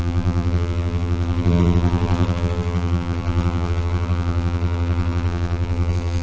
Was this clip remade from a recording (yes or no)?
yes